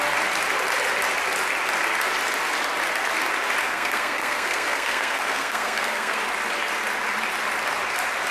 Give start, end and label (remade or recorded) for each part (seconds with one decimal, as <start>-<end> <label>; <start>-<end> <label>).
0.0-3.6 recorded; 3.6-6.2 remade; 6.2-8.3 recorded